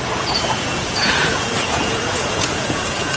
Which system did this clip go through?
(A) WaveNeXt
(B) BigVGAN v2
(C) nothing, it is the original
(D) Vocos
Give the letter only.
D